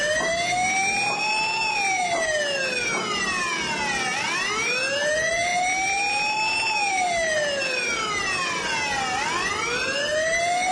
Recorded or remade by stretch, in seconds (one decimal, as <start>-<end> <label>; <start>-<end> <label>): 0.0-10.7 recorded